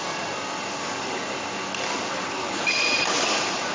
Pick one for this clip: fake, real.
real